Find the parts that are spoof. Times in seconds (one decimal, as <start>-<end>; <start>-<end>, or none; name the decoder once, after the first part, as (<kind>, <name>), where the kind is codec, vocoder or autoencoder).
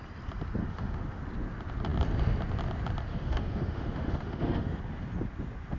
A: 0.6-1.2 (autoencoder, DAC-VAE); 3.1-4.8